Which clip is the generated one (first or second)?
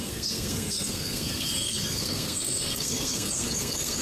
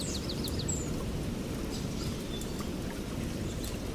first